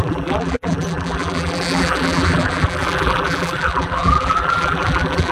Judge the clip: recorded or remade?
remade